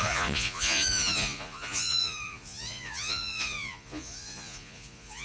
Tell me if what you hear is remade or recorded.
remade